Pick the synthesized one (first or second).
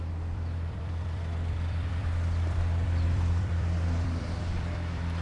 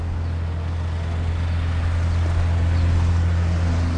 first